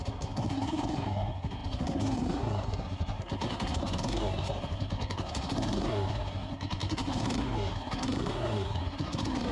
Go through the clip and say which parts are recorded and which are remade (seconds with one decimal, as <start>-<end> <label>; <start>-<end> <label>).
0.0-9.5 remade